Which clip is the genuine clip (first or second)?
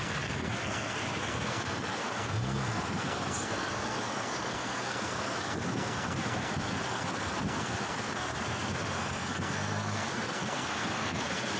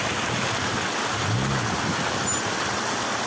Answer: second